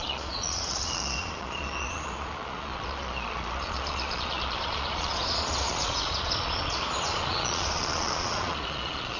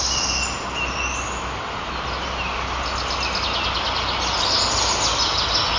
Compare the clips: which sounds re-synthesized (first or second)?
first